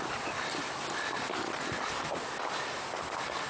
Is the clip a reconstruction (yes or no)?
no